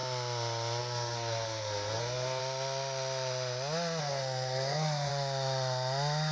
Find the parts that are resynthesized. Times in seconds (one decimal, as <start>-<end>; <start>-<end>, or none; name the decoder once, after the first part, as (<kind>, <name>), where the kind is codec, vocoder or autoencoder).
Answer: 0.8-2.4 (codec, SNAC); 4.0-5.1